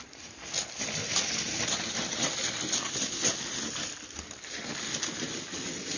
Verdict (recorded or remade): recorded